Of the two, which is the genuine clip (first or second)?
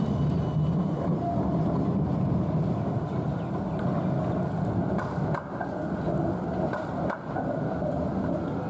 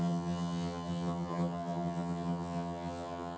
first